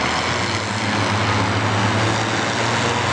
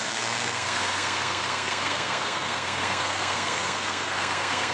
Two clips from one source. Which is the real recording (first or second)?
first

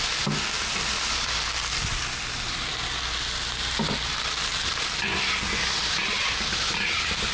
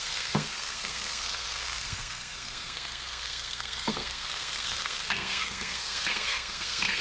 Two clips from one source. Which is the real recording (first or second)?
first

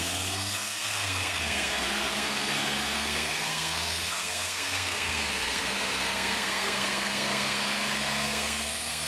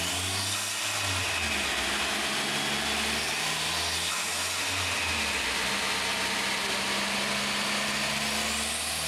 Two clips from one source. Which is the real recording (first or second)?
second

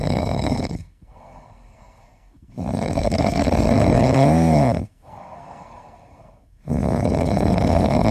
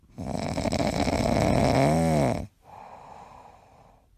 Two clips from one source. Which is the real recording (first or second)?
second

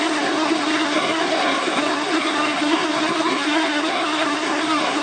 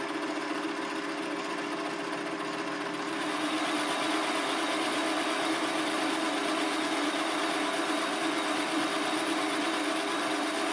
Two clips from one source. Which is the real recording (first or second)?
second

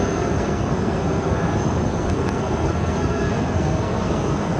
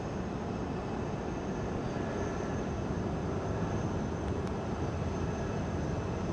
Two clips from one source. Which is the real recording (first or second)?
second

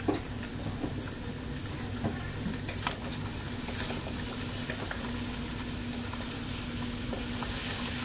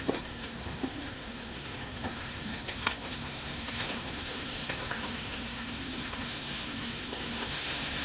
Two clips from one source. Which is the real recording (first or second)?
first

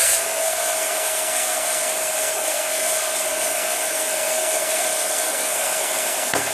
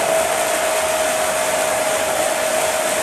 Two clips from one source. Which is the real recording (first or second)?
second